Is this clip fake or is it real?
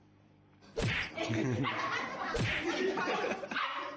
fake